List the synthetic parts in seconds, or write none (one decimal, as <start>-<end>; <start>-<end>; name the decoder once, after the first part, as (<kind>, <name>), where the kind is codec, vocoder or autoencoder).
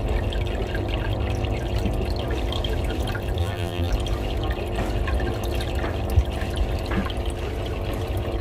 3.4-3.9 (vocoder, BigVGAN v2)